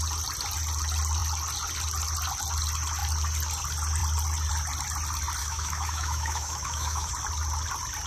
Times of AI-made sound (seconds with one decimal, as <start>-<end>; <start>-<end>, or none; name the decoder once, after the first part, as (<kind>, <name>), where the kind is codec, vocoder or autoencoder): 5.4-7.1 (autoencoder, DAC-VAE)